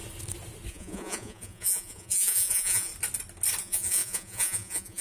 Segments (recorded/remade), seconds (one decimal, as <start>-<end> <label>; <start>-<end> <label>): 0.0-0.7 recorded; 0.7-2.9 remade; 2.9-3.6 recorded; 3.6-5.0 remade